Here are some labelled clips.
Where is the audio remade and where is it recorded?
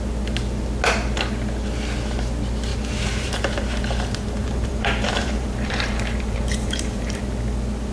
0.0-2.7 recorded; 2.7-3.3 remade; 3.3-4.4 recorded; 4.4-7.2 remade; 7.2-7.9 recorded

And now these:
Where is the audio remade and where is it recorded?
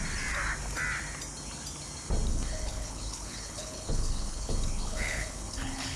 0.0-2.3 recorded; 2.3-6.0 remade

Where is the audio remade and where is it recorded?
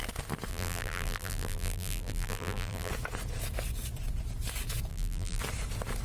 0.0-0.5 recorded; 0.5-2.9 remade; 2.9-4.9 recorded; 4.9-5.4 remade; 5.4-6.0 recorded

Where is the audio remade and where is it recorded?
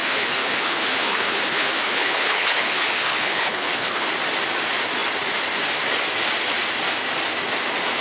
0.0-4.1 remade; 4.1-8.0 recorded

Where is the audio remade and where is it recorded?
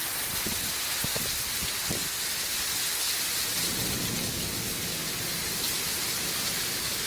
0.0-4.3 recorded; 4.3-5.0 remade; 5.0-6.6 recorded; 6.6-7.1 remade